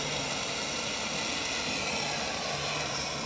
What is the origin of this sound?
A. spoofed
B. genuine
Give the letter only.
B